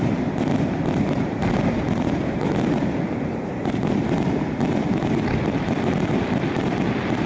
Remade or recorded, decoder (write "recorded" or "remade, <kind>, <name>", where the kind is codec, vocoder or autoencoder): recorded